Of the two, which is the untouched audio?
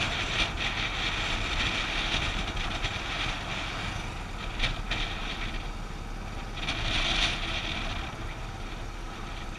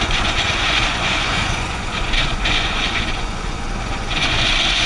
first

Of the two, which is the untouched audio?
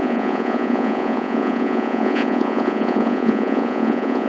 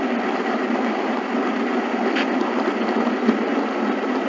second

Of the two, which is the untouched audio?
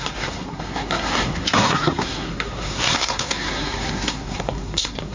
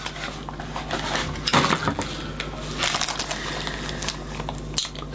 second